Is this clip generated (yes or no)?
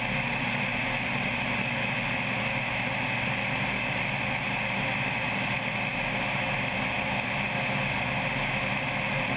no